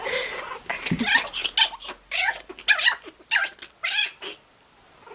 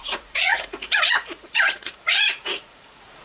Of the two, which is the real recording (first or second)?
first